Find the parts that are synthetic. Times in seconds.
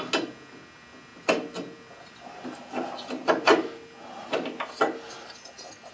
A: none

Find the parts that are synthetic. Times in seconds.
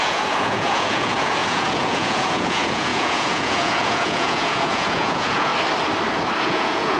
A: 0.0-5.5 (vocoder, Vocos); 6.4-7.0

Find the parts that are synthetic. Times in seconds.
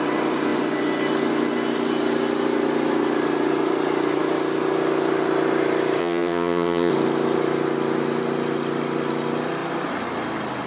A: 6.0-6.9 (vocoder, HiFi-GAN)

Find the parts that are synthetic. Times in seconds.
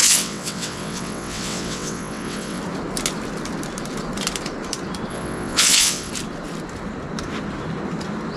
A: 0.0-2.6 (vocoder, WaveNeXt); 5.1-6.1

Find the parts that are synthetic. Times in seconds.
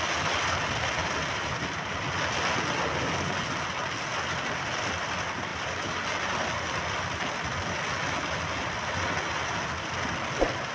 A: none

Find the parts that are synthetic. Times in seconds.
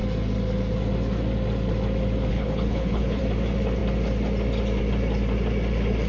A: 2.3-3.2 (codec, HILCodec)